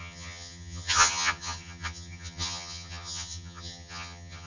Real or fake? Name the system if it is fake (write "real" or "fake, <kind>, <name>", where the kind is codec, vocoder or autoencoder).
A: fake, vocoder, HiFi-GAN